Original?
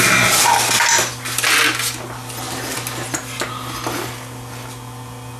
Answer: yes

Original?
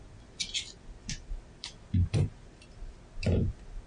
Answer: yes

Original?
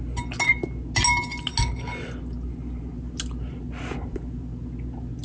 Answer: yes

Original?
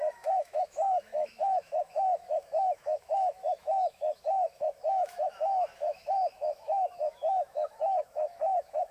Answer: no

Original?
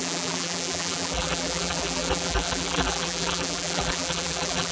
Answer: no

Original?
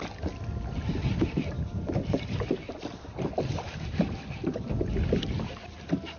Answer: yes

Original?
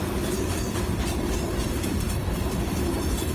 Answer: no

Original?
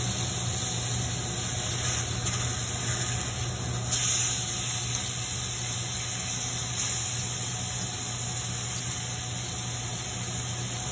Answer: yes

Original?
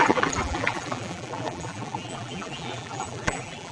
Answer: no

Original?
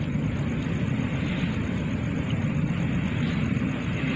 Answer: yes